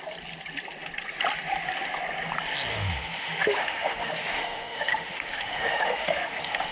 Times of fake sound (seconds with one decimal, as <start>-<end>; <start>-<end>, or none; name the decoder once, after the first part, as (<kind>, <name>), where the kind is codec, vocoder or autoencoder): 2.7-6.7 (autoencoder, DAC-VAE)